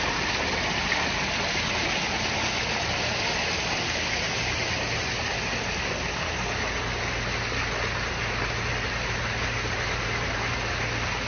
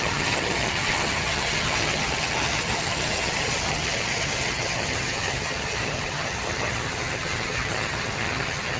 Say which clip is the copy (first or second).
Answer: second